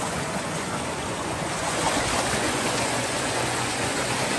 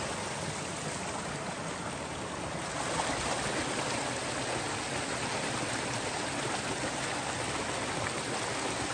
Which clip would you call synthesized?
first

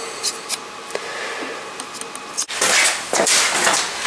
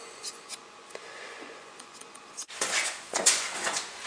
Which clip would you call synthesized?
second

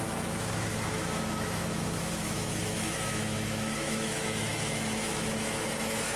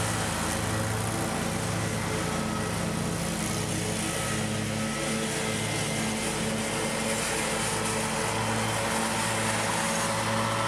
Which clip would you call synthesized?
first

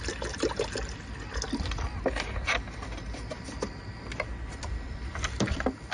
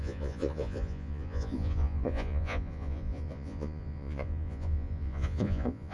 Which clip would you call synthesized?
second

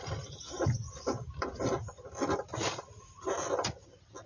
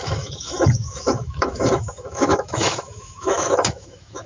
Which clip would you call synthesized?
second